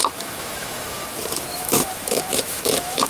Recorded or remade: remade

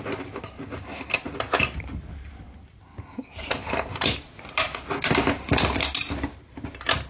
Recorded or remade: recorded